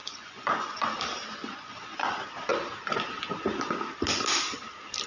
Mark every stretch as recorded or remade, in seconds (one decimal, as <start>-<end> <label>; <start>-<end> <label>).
0.0-0.9 remade; 0.9-1.4 recorded; 1.4-2.1 remade; 2.1-5.1 recorded